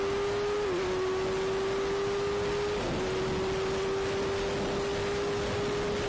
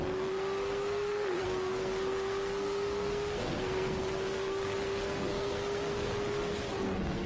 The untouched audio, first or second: first